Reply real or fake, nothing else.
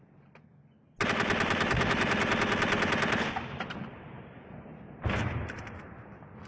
real